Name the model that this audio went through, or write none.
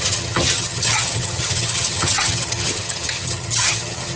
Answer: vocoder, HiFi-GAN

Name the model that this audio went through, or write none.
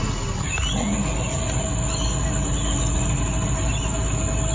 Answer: none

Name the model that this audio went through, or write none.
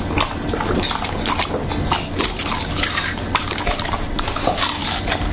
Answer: none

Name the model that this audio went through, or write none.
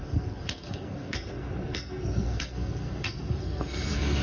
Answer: codec, SNAC